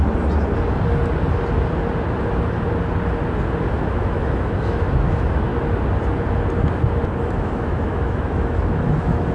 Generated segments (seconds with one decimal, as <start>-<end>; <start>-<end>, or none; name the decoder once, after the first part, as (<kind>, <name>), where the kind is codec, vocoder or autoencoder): 3.7-5.5 (autoencoder, DAC-VAE); 7.2-9.3